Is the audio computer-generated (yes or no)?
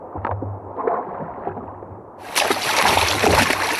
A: no